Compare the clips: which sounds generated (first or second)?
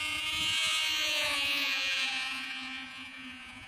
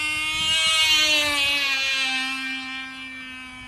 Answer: first